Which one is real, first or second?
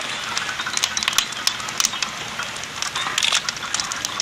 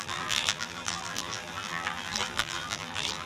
first